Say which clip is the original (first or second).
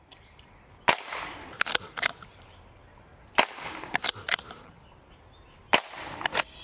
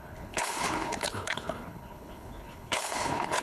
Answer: first